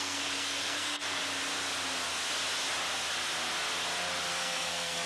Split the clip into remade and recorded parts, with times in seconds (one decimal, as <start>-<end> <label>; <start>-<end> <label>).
0.0-1.2 remade; 1.2-4.3 recorded; 4.3-5.1 remade